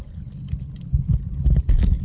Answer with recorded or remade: recorded